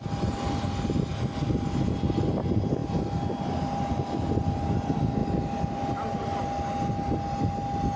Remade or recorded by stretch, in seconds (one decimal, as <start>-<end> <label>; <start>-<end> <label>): 0.0-8.0 recorded

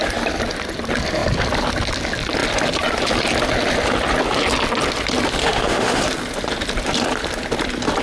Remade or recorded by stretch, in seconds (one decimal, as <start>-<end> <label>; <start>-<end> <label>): 0.0-5.4 recorded; 5.4-6.0 remade; 6.0-8.0 recorded